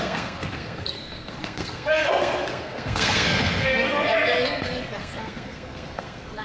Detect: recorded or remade remade